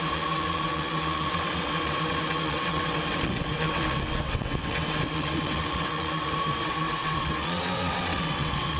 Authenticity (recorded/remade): remade